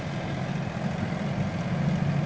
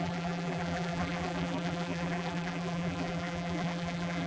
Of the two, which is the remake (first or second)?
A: second